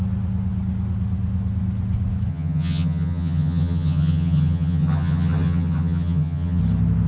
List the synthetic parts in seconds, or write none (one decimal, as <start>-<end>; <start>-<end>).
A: 2.3-6.6